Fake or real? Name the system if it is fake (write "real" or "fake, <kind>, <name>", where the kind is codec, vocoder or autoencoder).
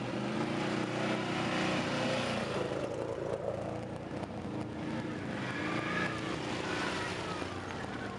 real